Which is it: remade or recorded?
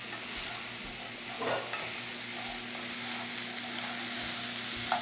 recorded